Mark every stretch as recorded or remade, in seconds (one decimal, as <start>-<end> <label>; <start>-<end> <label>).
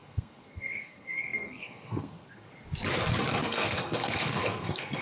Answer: 0.0-2.5 remade; 2.5-3.4 recorded; 3.4-5.0 remade